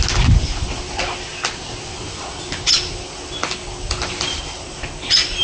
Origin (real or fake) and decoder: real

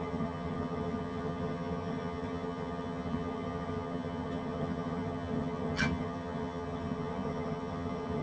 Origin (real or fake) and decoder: fake, vocoder, HiFi-GAN